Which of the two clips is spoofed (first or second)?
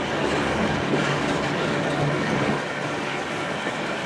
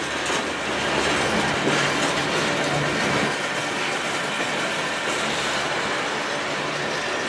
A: first